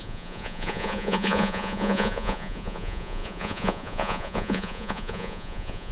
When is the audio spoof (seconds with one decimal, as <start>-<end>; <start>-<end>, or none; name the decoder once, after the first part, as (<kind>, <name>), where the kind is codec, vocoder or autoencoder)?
0.0-5.9 (vocoder, Vocos)

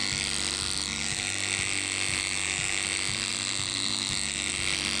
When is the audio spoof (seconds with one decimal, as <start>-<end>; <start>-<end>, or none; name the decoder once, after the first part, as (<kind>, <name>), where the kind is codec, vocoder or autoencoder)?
none

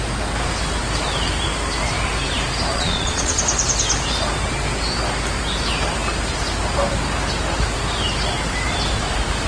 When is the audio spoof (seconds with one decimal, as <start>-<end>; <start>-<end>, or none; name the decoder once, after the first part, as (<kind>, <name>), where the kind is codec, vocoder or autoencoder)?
2.7-3.4 (vocoder, Vocos)

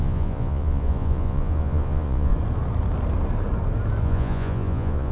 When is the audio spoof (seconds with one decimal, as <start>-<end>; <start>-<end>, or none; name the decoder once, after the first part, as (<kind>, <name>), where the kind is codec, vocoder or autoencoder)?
0.0-2.3 (vocoder, Vocos); 4.0-5.1

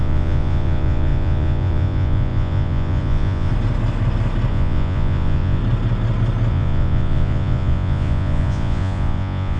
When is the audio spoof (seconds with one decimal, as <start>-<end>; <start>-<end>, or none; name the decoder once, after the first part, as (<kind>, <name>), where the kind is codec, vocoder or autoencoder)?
0.0-3.5 (vocoder, Vocos); 4.5-5.6; 6.5-9.6